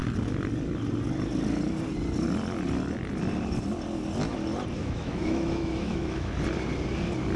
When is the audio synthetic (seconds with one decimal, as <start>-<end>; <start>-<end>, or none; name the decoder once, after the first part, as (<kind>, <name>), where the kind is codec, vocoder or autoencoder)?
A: 4.8-6.3 (autoencoder, DAC-VAE)